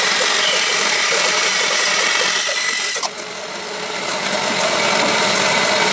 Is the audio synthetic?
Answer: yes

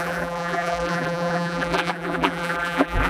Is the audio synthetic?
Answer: yes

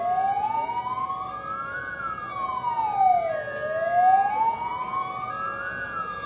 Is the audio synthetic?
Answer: no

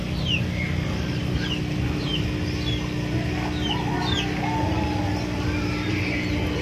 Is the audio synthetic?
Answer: no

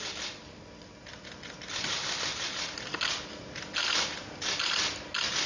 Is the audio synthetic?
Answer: no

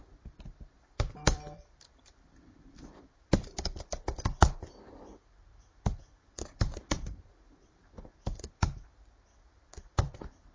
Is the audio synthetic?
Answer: yes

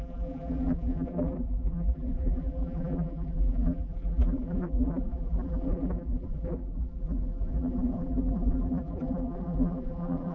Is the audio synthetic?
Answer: yes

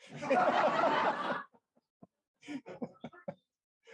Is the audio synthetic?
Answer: no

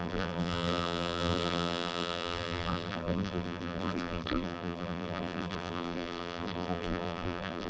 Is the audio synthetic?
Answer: yes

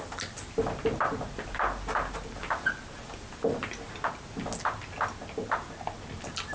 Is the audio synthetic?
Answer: no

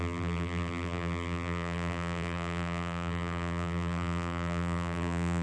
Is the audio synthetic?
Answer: yes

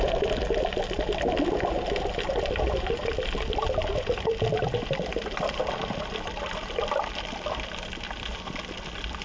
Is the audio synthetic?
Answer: yes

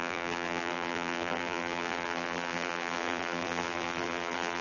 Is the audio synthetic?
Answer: yes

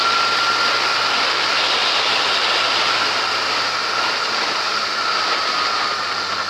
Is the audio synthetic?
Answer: no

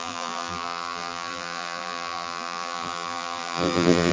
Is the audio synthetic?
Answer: yes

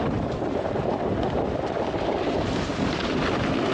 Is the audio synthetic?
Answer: no